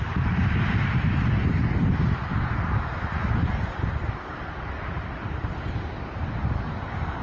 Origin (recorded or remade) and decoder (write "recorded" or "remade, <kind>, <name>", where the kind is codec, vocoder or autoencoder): recorded